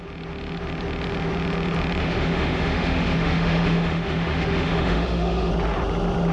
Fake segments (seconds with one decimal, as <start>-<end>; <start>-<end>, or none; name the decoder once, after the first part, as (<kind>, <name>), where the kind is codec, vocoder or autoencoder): 2.0-5.5 (autoencoder, DAC-VAE)